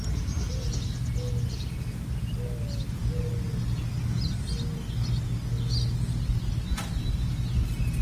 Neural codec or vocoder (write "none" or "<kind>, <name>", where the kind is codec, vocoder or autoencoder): none